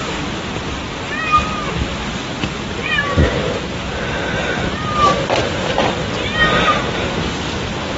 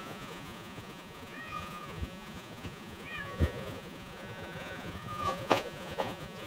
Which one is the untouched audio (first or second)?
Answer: first